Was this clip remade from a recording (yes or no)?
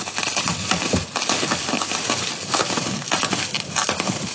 no